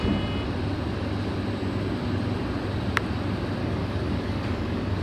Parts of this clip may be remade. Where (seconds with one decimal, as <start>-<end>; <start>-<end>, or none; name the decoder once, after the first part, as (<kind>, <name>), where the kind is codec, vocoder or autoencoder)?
3.6-5.0 (codec, DAC)